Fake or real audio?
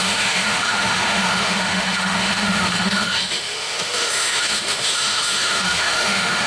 fake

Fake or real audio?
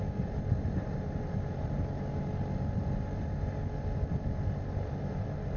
real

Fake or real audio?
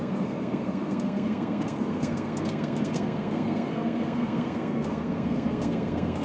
fake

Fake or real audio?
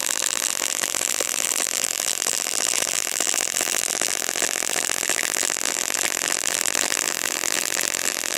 fake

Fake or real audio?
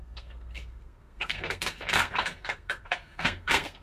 fake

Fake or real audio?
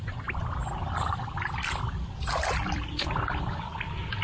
fake